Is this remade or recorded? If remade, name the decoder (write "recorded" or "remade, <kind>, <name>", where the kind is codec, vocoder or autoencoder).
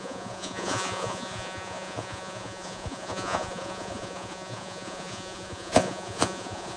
remade, vocoder, Vocos